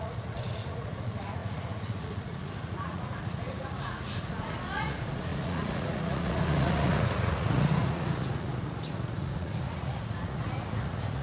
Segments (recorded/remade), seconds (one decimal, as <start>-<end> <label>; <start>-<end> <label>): 0.0-11.2 remade